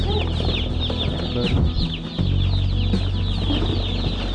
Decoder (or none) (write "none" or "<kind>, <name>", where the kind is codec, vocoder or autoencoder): none